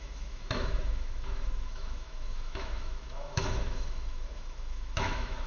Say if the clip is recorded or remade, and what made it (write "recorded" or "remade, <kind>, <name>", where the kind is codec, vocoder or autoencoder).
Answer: remade, autoencoder, DAC-VAE